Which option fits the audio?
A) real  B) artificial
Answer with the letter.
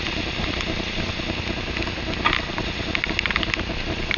A